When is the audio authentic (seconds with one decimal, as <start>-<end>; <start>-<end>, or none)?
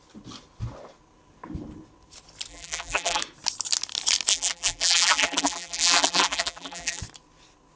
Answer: 0.0-2.5; 3.2-4.3; 7.0-7.8